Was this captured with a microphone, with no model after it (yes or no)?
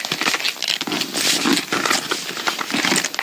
yes